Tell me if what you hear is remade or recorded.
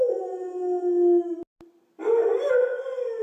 recorded